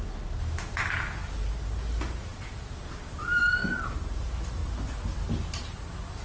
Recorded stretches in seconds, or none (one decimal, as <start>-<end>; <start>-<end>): 0.0-4.6; 5.2-6.2